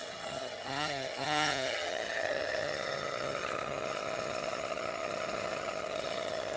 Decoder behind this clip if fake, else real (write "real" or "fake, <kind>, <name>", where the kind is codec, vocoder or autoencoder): fake, vocoder, HiFi-GAN